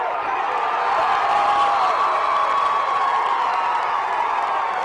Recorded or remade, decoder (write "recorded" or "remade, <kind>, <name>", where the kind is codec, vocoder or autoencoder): recorded